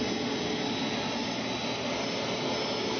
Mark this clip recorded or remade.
recorded